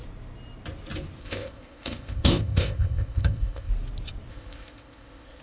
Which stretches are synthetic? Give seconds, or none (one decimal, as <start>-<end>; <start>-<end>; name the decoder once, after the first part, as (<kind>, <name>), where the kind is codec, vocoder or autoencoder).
1.2-3.7 (codec, ZipCodec); 4.3-5.4